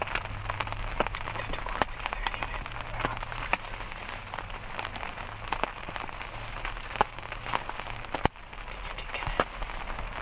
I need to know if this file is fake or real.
real